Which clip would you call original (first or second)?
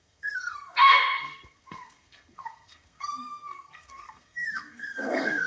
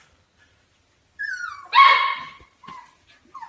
second